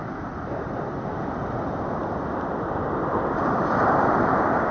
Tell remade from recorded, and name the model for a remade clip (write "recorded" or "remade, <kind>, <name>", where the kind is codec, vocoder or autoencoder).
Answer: recorded